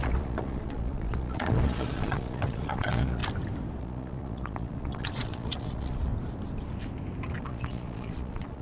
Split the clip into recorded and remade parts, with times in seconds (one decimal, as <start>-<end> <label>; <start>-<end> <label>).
0.0-3.2 remade; 3.2-3.8 recorded; 3.8-6.1 remade; 6.1-7.4 recorded; 7.4-8.6 remade

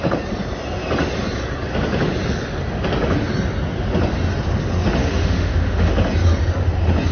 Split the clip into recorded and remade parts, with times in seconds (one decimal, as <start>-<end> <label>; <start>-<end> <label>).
0.0-5.0 recorded; 5.0-5.9 remade; 5.9-7.1 recorded

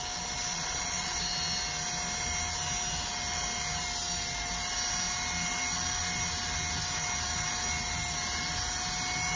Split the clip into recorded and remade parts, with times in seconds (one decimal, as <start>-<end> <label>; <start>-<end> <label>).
0.0-0.5 recorded; 0.5-1.2 remade; 1.2-9.4 recorded

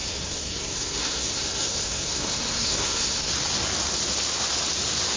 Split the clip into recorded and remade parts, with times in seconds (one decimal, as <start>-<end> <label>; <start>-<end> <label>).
0.0-3.3 remade; 3.3-5.2 recorded

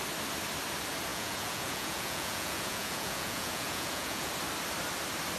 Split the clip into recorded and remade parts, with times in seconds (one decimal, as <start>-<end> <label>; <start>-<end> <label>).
0.0-1.1 recorded; 1.1-4.3 remade; 4.3-5.4 recorded

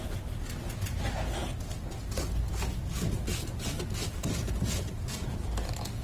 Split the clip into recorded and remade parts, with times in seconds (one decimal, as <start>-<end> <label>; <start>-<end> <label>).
0.0-6.0 recorded